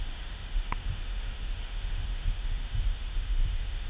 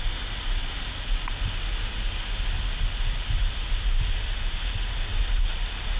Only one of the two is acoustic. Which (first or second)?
second